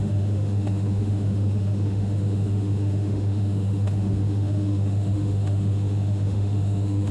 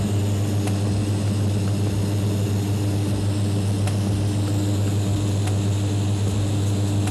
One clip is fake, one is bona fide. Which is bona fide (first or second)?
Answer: second